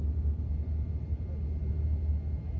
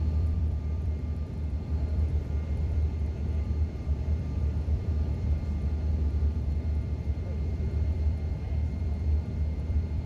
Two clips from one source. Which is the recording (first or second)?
first